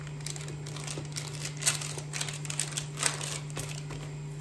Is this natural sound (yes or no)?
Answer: yes